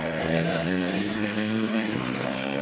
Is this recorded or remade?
remade